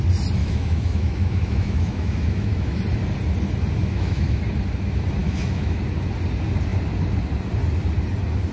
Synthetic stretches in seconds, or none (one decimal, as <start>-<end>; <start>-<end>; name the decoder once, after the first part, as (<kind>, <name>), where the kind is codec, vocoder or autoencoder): 0.4-2.8 (autoencoder, DAC-VAE); 3.8-4.4; 5.2-5.8